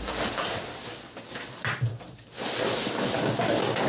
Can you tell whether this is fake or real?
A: real